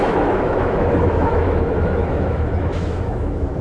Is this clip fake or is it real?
fake